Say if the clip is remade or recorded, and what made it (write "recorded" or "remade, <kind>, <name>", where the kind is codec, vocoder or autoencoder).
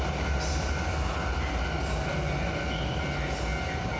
recorded